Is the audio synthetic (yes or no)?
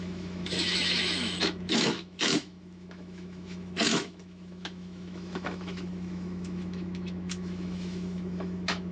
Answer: yes